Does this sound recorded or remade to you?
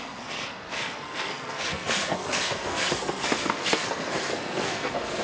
remade